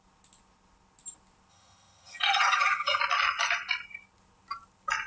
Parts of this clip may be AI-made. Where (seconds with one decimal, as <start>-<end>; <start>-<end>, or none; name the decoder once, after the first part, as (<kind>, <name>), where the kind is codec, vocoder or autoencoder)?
1.5-3.0 (vocoder, HiFi-GAN)